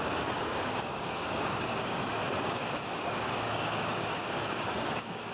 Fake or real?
fake